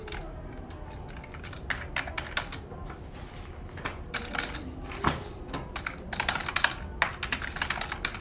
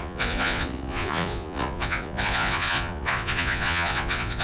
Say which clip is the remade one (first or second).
second